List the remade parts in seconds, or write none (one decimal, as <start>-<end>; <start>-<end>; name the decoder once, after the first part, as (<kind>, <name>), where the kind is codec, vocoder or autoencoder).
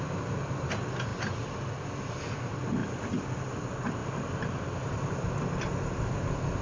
2.8-3.5 (vocoder, BigVGAN v2); 4.0-4.9